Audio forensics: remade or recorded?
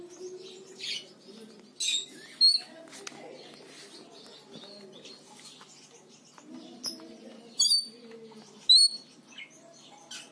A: recorded